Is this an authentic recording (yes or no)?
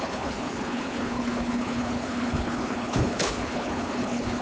no